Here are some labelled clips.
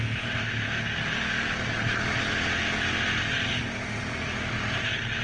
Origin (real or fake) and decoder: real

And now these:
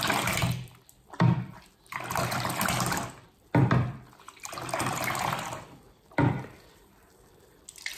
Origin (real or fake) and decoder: fake, vocoder, BigVGAN v2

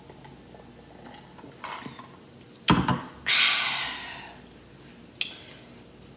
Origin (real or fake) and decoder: real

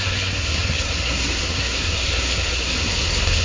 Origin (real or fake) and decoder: fake, codec, SNAC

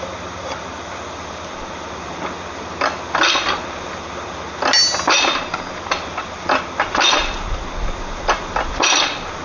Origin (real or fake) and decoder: real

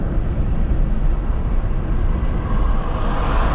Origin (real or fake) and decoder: fake, vocoder, BigVGAN v2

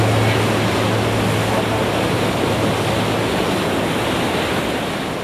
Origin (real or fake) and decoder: real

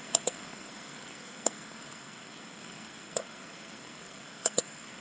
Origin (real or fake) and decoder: fake, codec, SNAC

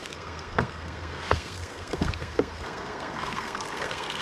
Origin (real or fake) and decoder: fake, codec, SNAC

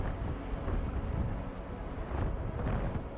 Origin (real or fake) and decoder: real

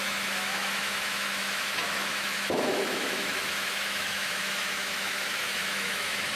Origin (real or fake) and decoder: fake, autoencoder, DAC-VAE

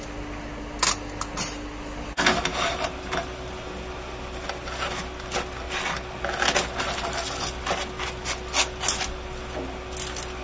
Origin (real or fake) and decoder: real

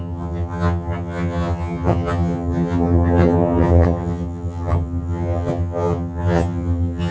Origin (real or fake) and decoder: fake, vocoder, HiFi-GAN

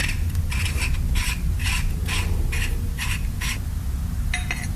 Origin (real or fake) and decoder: real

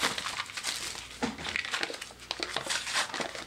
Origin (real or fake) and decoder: real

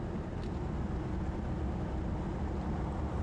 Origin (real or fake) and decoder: real